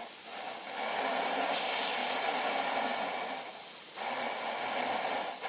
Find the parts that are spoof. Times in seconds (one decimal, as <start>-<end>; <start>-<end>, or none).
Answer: none